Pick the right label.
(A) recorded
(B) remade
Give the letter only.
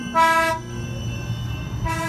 A